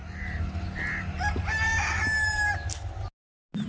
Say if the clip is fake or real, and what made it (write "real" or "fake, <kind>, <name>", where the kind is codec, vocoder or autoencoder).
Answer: real